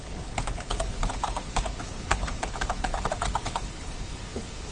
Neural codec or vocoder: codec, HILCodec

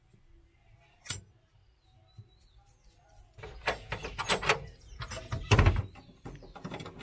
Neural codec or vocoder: none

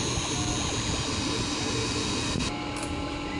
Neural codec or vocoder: none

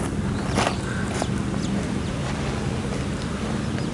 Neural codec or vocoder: none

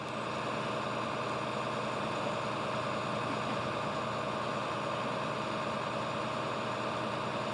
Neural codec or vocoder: none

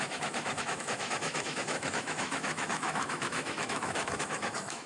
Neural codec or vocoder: autoencoder, DAC-VAE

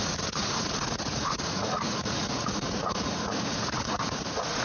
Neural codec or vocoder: vocoder, Vocos